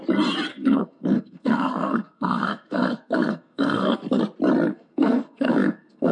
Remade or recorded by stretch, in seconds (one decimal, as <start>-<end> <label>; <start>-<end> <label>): 0.0-0.5 recorded; 0.5-4.2 remade; 4.2-4.7 recorded; 4.7-6.1 remade